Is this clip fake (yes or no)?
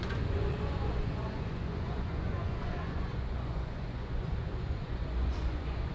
yes